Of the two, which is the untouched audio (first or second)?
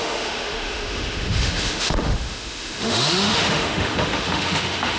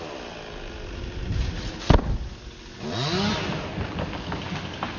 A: second